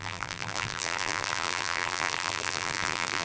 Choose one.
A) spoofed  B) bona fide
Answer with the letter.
A